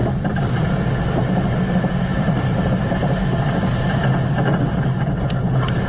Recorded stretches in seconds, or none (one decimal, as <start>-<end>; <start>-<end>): 2.8-5.9